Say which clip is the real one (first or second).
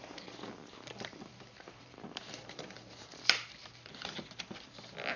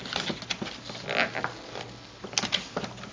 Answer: second